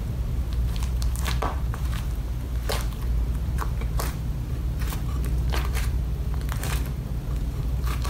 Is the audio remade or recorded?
remade